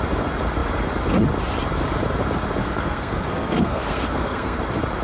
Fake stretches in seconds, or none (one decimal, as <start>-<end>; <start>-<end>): 2.6-4.6